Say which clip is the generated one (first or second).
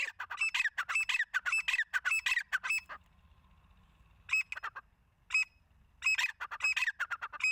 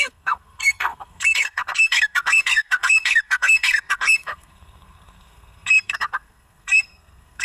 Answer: second